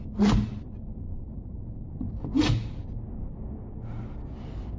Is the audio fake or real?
real